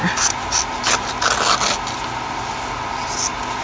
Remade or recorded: recorded